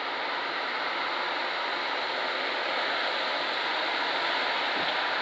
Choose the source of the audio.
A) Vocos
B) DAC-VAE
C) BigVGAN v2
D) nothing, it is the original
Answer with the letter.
D